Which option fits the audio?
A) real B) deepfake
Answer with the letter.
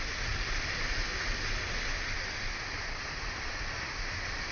A